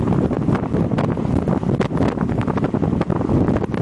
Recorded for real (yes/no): yes